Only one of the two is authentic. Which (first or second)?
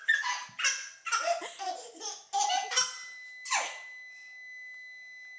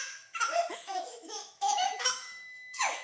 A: first